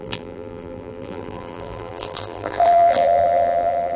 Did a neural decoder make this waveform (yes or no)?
yes